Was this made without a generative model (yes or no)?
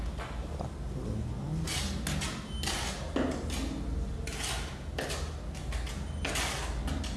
yes